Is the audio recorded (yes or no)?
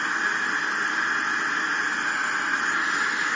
yes